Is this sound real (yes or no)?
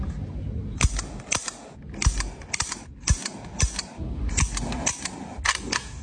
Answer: yes